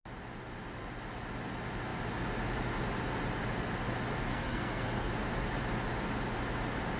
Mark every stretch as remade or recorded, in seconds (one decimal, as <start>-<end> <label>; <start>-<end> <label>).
0.0-4.3 recorded; 4.3-5.1 remade; 5.1-7.0 recorded